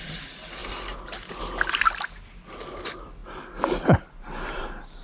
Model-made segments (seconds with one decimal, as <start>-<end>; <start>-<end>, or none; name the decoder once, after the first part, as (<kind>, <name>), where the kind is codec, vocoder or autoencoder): none